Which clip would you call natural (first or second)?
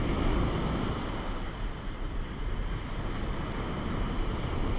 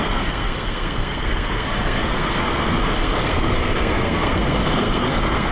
first